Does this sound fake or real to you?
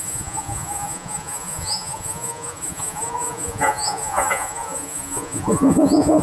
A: fake